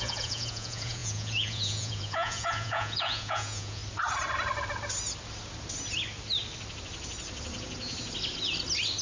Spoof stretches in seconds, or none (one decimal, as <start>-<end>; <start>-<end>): 0.0-3.8